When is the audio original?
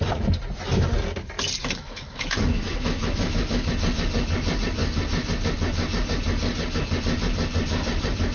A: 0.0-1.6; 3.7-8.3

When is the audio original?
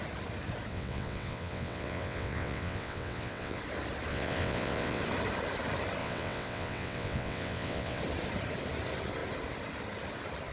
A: 0.0-0.7; 3.6-4.1; 5.0-6.0; 8.0-10.5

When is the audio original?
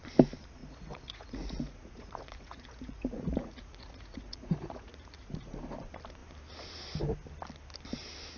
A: 0.0-0.6; 5.6-8.4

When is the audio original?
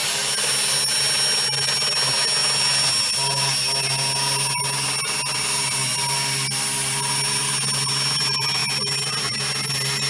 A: 0.0-10.1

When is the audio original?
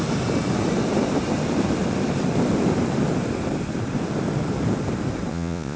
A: 0.0-5.3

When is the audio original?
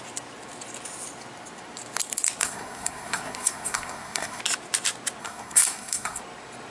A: 0.0-2.4; 4.4-5.2; 6.2-6.7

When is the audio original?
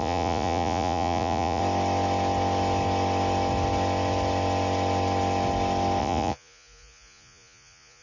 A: 1.6-6.0